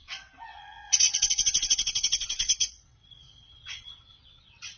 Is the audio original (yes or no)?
no